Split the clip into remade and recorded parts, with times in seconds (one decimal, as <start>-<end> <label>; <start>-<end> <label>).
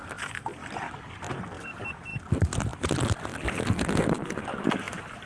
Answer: 0.0-5.3 remade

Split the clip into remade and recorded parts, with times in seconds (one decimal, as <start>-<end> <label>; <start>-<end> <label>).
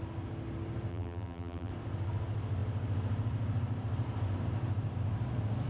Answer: 0.0-0.9 recorded; 0.9-1.7 remade; 1.7-5.7 recorded